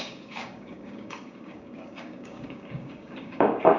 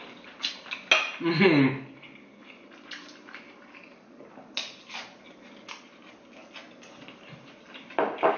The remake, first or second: first